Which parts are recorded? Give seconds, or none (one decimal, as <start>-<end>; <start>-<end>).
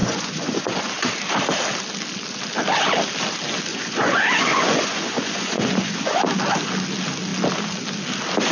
0.9-3.7; 6.2-8.5